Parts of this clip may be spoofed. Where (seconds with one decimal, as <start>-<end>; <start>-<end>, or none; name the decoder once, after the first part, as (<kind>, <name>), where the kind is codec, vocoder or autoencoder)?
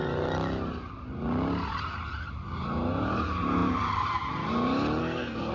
5.0-5.5 (codec, SNAC)